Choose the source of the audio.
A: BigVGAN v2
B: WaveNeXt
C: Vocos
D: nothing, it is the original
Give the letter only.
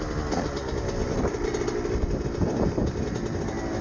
A